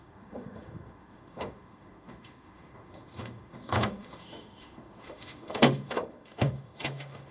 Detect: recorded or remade remade